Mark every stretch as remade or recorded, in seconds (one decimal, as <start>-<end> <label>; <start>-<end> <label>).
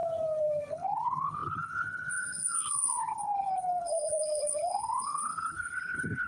0.0-0.7 recorded; 0.7-6.3 remade